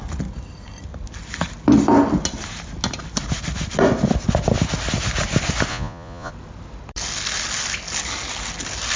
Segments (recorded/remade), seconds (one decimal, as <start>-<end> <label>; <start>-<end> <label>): 0.0-5.7 recorded; 5.7-6.3 remade; 6.3-9.0 recorded